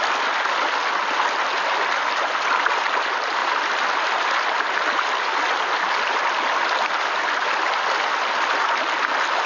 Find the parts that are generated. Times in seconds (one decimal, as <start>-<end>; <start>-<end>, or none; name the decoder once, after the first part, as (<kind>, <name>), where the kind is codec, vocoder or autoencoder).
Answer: none